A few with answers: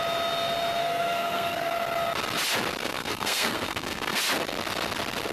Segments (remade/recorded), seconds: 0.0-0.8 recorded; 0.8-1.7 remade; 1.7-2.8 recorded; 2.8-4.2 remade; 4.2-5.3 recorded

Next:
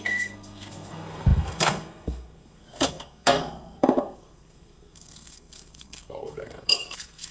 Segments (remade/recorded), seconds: 0.0-7.3 remade

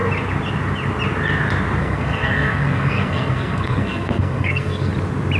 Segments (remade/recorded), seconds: 0.0-1.8 recorded; 1.8-4.9 remade; 4.9-5.4 recorded

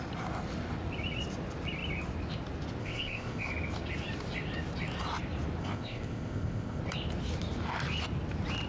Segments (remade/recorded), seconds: 0.0-2.8 recorded; 2.8-3.5 remade; 3.5-5.6 recorded; 5.6-6.8 remade; 6.8-8.7 recorded

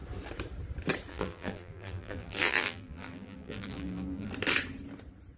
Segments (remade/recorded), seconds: 0.0-1.1 recorded; 1.1-4.3 remade; 4.3-5.4 recorded

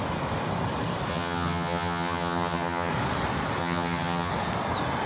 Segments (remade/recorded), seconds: 0.0-1.1 recorded; 1.1-2.9 remade; 2.9-3.6 recorded; 3.6-4.3 remade; 4.3-5.1 recorded